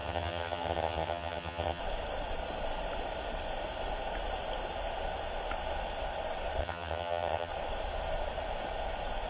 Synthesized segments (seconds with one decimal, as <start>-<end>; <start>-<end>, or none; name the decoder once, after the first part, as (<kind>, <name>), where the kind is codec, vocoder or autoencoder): 0.0-1.8 (vocoder, HiFi-GAN); 6.6-7.5